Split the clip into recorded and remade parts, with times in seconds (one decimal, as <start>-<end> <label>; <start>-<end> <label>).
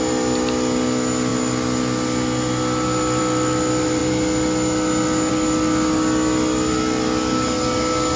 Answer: 0.0-8.2 recorded